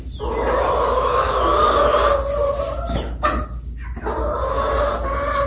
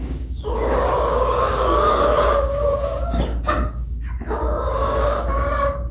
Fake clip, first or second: second